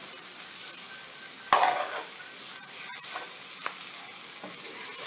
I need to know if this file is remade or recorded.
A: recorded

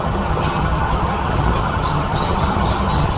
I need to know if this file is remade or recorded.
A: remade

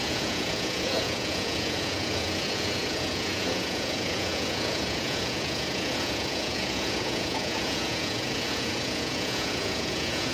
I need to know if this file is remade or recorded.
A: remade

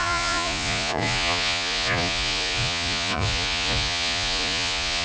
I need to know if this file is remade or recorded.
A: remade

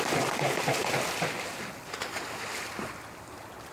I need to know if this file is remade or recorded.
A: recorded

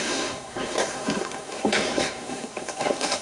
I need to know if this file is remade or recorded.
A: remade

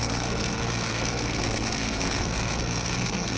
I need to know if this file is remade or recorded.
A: remade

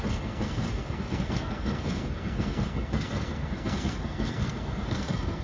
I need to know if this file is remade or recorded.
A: remade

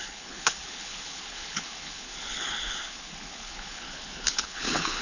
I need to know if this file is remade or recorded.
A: remade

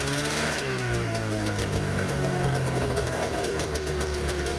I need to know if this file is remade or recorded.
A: remade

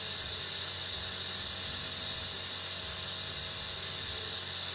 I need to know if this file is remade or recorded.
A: recorded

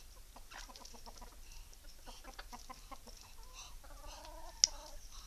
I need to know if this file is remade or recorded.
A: recorded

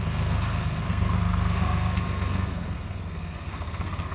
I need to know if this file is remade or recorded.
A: remade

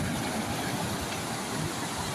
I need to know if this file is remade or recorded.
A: recorded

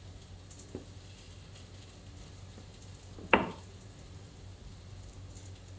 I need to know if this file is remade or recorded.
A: recorded